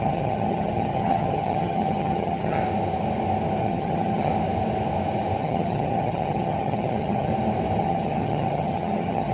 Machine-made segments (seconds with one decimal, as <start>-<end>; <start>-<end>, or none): 0.0-2.6; 3.6-4.3; 5.4-7.3; 7.8-9.3